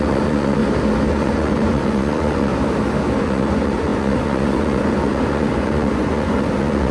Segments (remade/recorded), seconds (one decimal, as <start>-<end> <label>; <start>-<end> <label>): 0.0-0.6 remade; 0.6-1.1 recorded; 1.1-2.5 remade; 2.5-3.2 recorded; 3.2-6.9 remade